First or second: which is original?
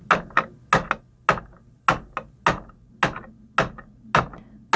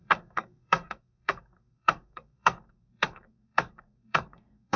first